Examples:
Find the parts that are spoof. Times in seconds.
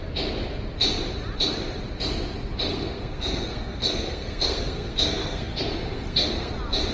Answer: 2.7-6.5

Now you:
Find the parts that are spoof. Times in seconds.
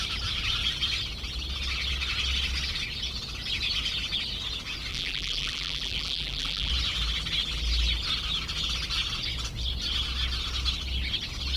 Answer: 4.9-6.7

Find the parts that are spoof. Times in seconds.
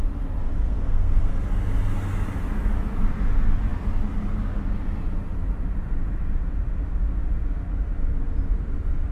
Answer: 0.6-1.3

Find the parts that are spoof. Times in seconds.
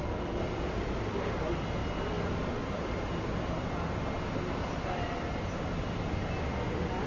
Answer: none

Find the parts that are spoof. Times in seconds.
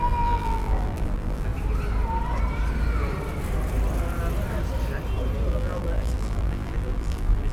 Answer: 0.0-1.5; 5.5-7.5